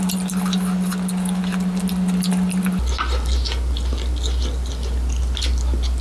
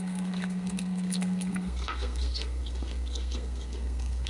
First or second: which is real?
first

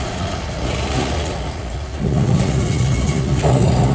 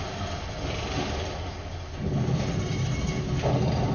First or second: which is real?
second